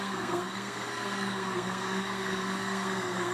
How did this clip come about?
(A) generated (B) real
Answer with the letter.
A